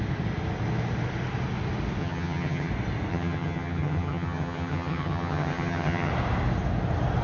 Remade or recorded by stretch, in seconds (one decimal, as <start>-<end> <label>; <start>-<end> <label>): 0.0-2.0 recorded; 2.0-2.7 remade; 2.7-3.1 recorded; 3.1-6.1 remade; 6.1-7.2 recorded

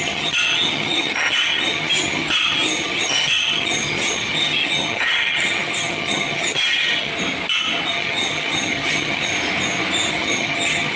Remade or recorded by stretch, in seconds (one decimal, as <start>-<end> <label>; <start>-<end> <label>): 0.0-7.1 remade; 7.1-7.9 recorded; 7.9-9.3 remade; 9.3-10.1 recorded; 10.1-11.0 remade

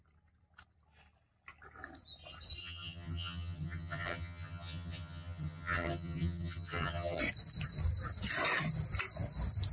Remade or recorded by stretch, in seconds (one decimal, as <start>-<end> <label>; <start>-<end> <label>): 0.0-2.6 recorded; 2.6-7.2 remade; 7.2-9.7 recorded

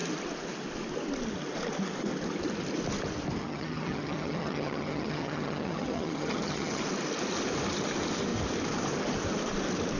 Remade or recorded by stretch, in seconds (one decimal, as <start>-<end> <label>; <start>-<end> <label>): 0.0-3.4 recorded; 3.4-6.8 remade; 6.8-10.0 recorded

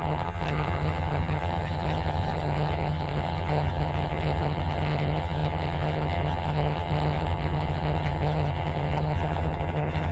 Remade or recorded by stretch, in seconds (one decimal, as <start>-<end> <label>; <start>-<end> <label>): 0.0-10.1 remade

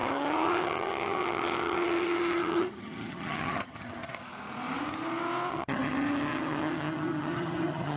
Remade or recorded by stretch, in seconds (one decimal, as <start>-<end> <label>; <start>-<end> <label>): 0.0-4.2 remade; 4.2-5.5 recorded; 5.5-8.0 remade